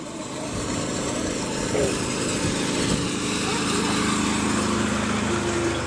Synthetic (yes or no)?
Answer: no